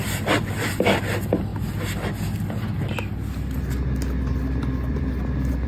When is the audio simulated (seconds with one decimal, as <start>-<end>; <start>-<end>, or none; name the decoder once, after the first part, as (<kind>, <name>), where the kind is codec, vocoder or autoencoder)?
0.0-1.5 (vocoder, BigVGAN v2); 4.9-5.7